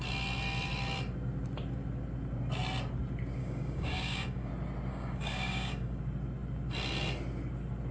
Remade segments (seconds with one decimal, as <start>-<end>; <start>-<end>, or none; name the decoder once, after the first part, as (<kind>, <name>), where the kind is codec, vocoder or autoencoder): 3.4-4.5 (codec, DAC); 4.9-6.0